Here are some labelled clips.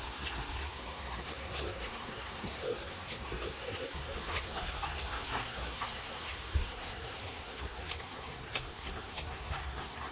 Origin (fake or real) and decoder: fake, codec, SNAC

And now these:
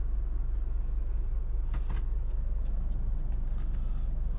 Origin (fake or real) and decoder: real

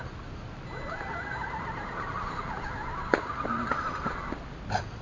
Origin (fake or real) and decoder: fake, vocoder, BigVGAN v2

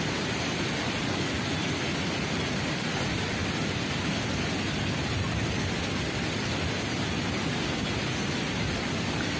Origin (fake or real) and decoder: real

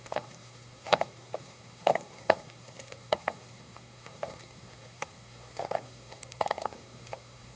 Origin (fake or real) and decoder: fake, codec, SNAC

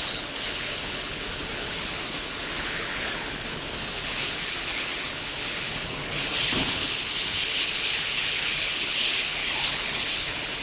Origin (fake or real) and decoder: fake, codec, HILCodec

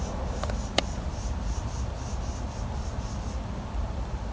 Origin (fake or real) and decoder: real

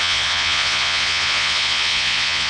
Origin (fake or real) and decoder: fake, vocoder, Vocos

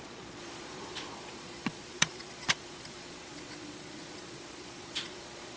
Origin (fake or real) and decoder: fake, vocoder, Vocos